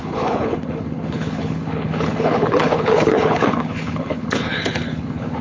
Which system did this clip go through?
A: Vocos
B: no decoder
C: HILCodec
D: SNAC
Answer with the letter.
C